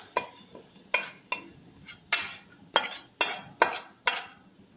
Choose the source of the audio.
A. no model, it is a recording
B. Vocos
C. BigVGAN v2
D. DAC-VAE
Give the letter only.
A